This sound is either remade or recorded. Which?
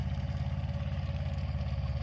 recorded